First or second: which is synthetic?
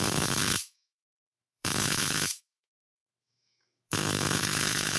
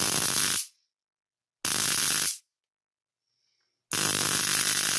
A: first